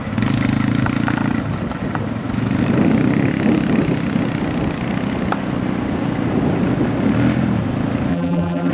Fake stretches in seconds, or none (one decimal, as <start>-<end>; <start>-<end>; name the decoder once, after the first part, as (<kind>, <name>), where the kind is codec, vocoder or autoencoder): 8.1-8.7 (vocoder, BigVGAN v2)